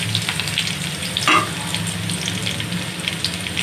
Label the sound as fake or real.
real